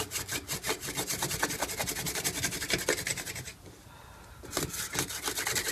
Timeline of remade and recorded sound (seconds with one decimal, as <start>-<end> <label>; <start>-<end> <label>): 0.0-5.7 recorded